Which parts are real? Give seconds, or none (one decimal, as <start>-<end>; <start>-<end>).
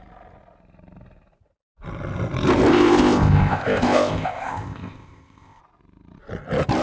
0.0-2.7; 5.6-6.8